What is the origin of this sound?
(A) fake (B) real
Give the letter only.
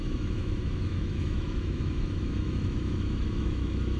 A